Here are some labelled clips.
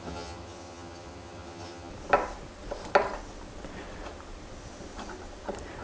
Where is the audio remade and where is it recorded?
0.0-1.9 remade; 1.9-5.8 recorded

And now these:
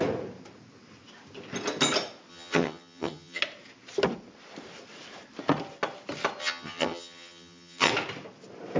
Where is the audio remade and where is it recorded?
0.0-2.3 recorded; 2.3-3.4 remade; 3.4-6.4 recorded; 6.4-7.9 remade; 7.9-8.8 recorded

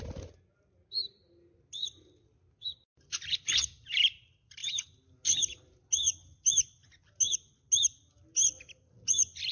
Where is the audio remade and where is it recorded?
0.0-9.5 recorded

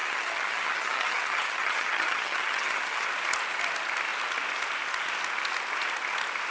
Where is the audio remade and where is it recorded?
0.0-3.1 remade; 3.1-6.5 recorded